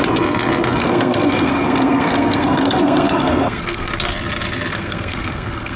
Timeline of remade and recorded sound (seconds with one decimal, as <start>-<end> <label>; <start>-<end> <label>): 0.0-0.8 recorded; 0.8-3.9 remade; 3.9-4.7 recorded; 4.7-5.8 remade